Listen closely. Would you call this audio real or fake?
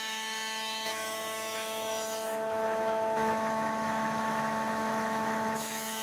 fake